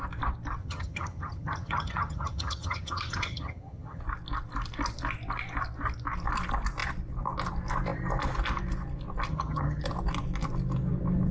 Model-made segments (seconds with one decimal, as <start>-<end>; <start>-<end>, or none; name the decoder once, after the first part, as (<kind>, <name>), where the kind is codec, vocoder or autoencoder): 0.6-4.0 (vocoder, HiFi-GAN); 9.3-9.8